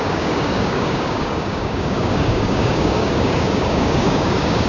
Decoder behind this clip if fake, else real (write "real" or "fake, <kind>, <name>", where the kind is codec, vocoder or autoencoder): fake, codec, DAC